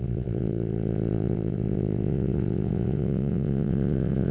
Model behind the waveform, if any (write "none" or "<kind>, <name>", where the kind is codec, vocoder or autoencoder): vocoder, WaveNeXt